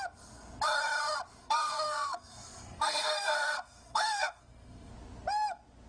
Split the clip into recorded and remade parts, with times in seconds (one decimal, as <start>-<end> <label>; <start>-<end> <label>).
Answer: 0.0-1.4 recorded; 1.4-4.9 remade; 4.9-5.9 recorded